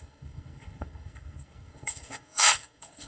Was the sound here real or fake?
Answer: fake